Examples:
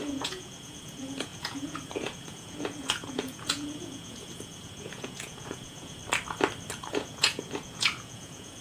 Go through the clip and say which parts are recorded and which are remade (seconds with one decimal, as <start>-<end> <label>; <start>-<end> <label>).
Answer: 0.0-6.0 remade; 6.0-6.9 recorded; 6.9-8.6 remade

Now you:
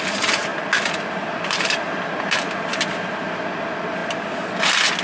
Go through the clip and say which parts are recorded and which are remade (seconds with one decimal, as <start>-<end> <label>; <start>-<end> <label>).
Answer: 0.0-5.0 recorded

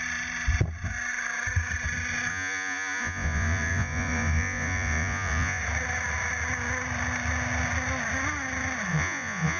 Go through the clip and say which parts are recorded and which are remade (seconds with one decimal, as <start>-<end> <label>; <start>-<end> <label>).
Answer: 0.0-2.3 recorded; 2.3-5.6 remade; 5.6-8.9 recorded; 8.9-9.6 remade

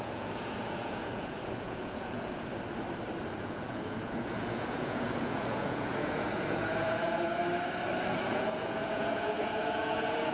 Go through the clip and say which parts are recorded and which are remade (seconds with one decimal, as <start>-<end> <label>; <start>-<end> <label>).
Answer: 0.0-2.5 remade; 2.5-3.3 recorded; 3.3-7.4 remade; 7.4-8.3 recorded; 8.3-10.3 remade